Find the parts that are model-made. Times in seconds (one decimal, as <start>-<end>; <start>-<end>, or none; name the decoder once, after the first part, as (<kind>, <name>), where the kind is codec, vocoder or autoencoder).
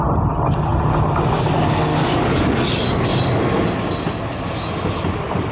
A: 1.9-2.6 (codec, DAC)